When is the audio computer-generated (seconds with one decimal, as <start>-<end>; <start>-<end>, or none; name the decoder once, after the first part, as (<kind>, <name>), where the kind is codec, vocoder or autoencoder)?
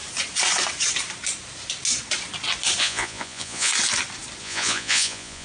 2.8-3.7 (vocoder, Vocos); 4.4-5.4